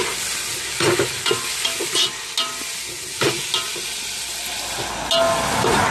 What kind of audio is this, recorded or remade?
recorded